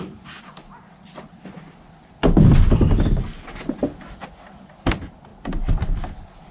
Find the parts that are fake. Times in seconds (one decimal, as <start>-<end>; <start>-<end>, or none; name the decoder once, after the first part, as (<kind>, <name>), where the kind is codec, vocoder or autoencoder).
none